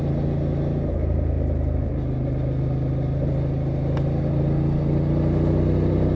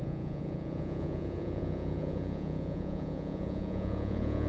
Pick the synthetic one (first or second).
second